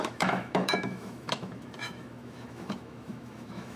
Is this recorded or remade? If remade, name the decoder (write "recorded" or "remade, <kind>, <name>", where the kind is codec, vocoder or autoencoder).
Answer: remade, autoencoder, DAC-VAE